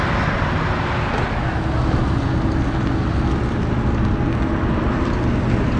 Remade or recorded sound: recorded